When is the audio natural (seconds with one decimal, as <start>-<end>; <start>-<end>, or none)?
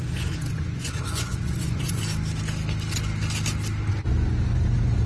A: 2.0-3.9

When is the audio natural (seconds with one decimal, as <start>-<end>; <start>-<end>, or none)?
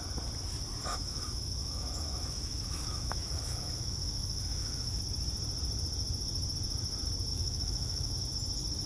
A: 0.0-0.9; 5.0-7.3; 8.1-8.9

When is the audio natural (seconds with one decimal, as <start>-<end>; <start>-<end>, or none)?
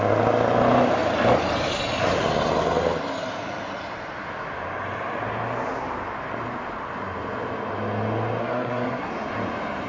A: 0.0-8.4; 9.1-9.9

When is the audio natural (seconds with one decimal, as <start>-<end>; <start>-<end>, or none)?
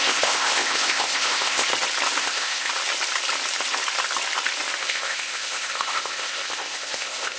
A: 1.7-2.2; 2.7-4.8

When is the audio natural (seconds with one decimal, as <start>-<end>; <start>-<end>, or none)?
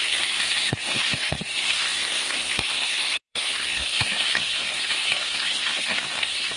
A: none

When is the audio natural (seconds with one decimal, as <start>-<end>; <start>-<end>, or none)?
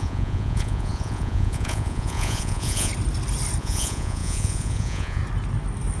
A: 2.9-3.6; 5.2-6.0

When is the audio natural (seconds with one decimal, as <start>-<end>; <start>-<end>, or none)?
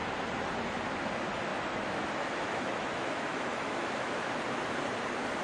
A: 0.0-1.5; 4.3-5.4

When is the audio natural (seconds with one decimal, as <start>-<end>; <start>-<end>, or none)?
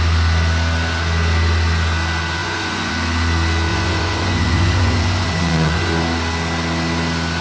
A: 0.0-2.4; 2.9-3.7; 5.9-7.4